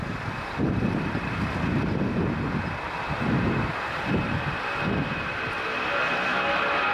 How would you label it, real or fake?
real